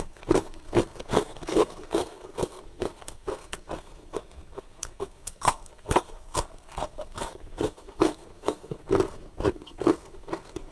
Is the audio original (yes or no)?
no